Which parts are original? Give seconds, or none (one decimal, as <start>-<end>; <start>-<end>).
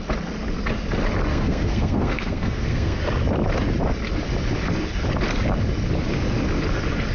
0.0-1.3; 3.0-7.1